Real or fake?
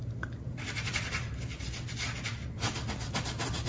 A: real